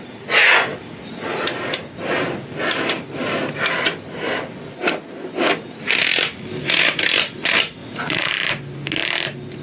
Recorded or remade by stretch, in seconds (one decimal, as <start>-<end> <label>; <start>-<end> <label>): 0.0-7.8 recorded; 7.8-8.3 remade; 8.3-9.6 recorded